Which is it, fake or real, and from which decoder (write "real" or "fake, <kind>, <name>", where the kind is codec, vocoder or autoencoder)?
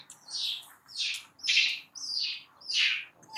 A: real